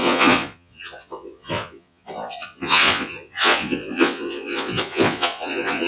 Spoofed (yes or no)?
yes